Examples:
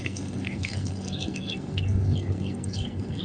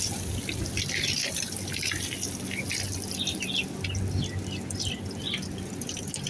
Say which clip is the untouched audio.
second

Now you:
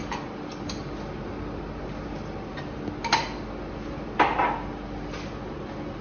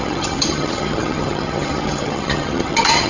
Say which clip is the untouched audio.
first